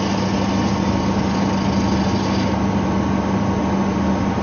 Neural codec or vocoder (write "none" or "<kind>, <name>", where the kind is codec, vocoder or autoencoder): none